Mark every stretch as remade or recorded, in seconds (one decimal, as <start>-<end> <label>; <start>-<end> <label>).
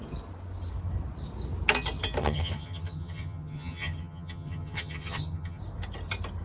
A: 0.0-2.2 recorded; 2.2-5.6 remade; 5.6-6.4 recorded